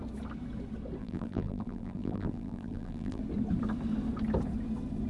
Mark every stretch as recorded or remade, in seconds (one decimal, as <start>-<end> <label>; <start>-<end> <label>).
0.0-1.0 recorded; 1.0-3.2 remade; 3.2-5.1 recorded